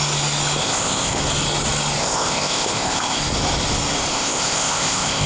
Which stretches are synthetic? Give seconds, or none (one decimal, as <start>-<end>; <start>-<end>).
0.6-1.2; 2.0-3.2; 4.1-5.3